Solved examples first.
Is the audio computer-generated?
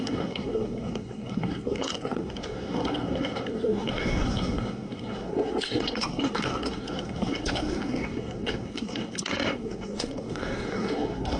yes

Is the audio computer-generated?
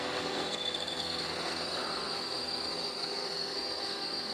yes